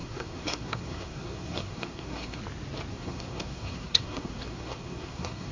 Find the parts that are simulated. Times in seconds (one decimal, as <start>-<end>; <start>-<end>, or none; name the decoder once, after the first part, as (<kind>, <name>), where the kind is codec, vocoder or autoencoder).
0.0-2.4 (codec, SNAC); 2.9-5.5